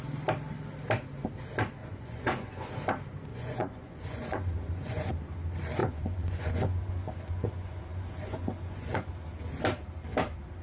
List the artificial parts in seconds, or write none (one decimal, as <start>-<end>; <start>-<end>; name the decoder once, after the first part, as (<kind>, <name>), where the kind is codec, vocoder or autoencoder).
1.8-2.7 (vocoder, Vocos); 3.3-5.1; 5.8-9.1